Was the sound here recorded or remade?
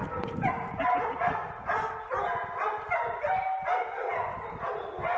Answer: recorded